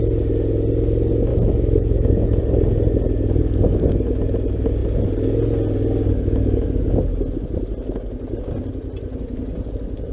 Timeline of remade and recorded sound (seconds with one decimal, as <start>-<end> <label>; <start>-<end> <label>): 0.0-1.3 recorded; 1.3-2.4 remade; 2.4-10.1 recorded